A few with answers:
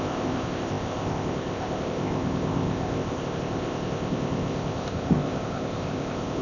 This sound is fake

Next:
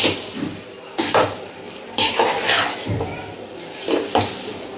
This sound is real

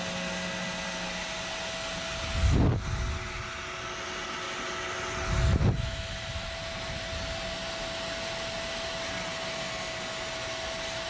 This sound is real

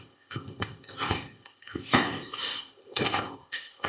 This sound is fake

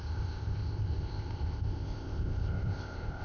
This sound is fake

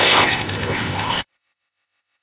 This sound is fake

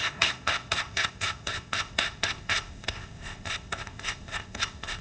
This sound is fake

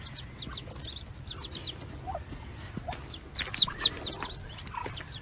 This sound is real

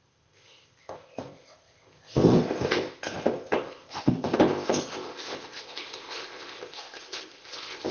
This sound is fake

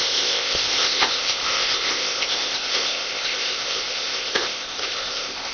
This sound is fake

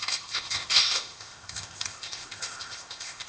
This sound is fake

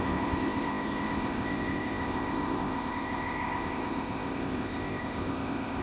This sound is fake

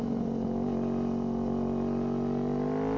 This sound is real